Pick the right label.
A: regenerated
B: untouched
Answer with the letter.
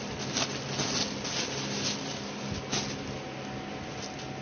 B